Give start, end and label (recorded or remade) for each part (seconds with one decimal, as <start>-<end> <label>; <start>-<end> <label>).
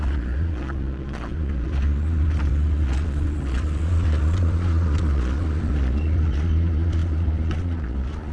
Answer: 0.0-8.3 remade